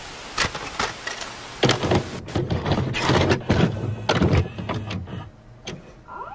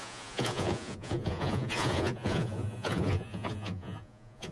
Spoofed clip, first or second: second